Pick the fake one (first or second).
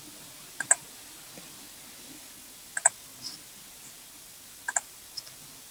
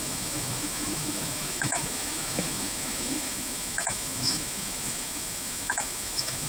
second